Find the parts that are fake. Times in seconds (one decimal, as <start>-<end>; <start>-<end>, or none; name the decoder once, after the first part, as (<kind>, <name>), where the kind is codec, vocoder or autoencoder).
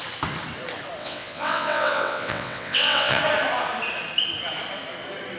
1.0-3.2 (vocoder, WaveNeXt)